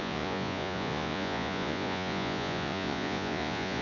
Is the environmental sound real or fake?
fake